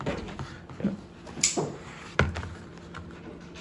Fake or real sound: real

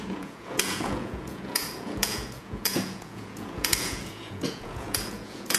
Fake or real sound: fake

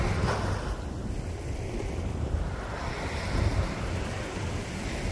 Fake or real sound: real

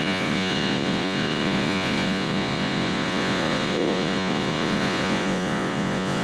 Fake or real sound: fake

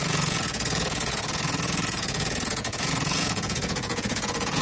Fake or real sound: fake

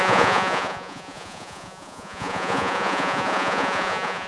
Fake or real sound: fake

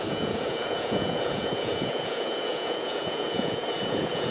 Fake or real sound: fake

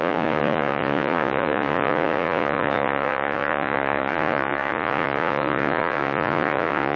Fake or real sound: fake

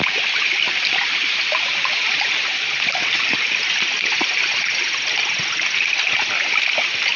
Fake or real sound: real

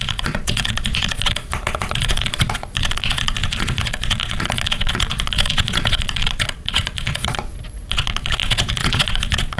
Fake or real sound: fake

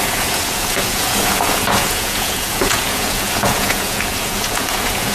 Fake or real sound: fake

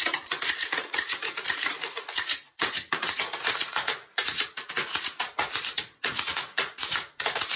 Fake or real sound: fake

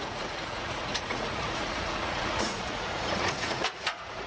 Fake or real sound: fake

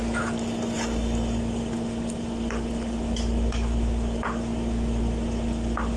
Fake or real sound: real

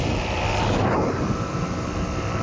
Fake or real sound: real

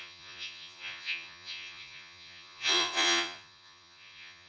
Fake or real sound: fake